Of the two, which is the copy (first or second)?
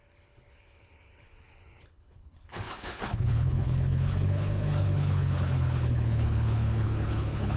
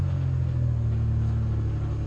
first